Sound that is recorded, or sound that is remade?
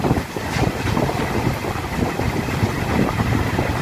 recorded